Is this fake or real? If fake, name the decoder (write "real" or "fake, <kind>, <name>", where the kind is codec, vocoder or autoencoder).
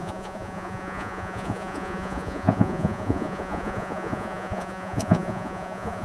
fake, vocoder, Vocos